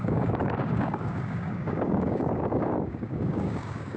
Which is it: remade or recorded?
remade